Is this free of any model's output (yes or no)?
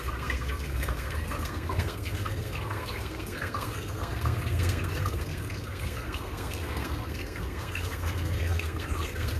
no